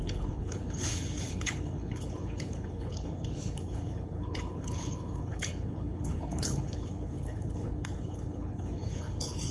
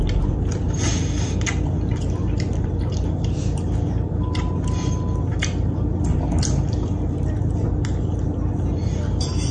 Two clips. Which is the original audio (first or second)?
second